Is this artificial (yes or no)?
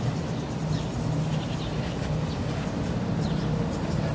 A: no